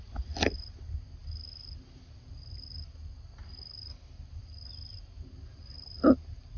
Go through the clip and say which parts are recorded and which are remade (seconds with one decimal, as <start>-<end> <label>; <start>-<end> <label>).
0.0-6.6 recorded